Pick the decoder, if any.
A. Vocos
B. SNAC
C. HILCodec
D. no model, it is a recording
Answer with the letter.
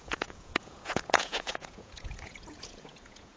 A